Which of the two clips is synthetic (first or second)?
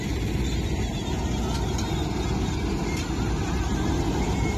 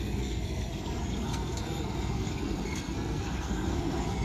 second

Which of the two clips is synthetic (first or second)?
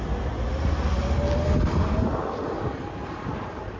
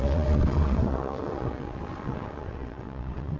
second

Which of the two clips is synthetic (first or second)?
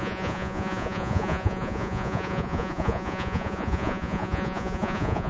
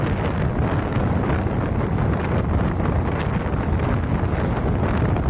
first